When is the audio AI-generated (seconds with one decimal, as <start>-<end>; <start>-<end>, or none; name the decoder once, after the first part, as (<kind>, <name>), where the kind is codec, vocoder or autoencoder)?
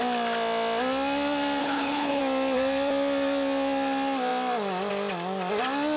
1.6-2.2 (codec, HILCodec)